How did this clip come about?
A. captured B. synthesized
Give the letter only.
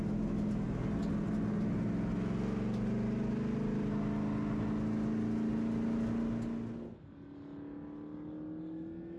A